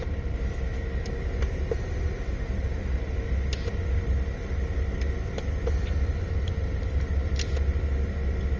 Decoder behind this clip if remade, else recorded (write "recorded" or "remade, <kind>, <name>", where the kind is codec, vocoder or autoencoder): recorded